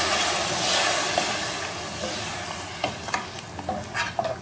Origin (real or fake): real